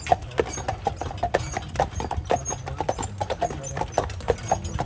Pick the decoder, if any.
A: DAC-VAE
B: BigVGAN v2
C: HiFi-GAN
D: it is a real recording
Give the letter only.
D